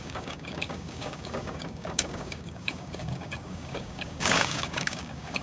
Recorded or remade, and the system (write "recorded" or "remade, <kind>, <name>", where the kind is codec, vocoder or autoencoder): remade, codec, DAC